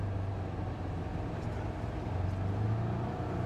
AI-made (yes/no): no